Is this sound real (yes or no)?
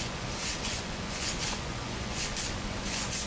no